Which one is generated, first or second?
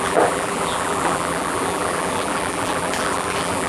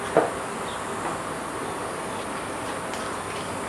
first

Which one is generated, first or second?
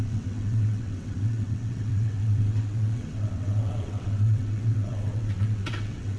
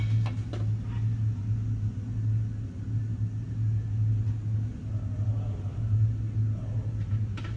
first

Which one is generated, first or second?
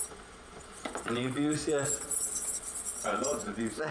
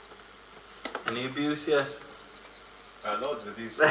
first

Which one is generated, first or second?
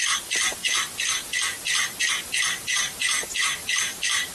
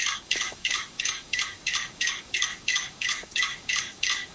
second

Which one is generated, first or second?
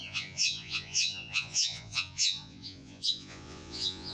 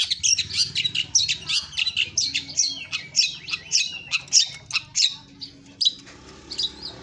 first